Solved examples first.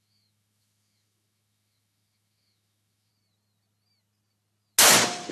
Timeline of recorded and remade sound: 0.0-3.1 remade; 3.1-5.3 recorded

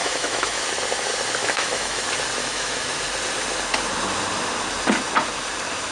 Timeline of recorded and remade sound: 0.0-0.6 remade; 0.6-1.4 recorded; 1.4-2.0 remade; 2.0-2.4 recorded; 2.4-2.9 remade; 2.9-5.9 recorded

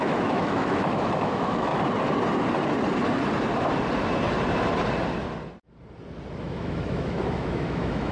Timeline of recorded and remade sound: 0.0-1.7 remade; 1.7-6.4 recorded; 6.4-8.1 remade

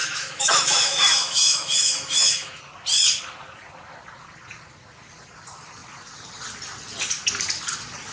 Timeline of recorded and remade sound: 0.0-2.6 remade; 2.6-8.1 recorded

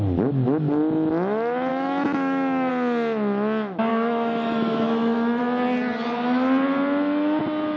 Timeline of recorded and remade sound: 0.0-1.7 recorded; 1.7-2.7 remade; 2.7-3.9 recorded; 3.9-5.4 remade; 5.4-7.8 recorded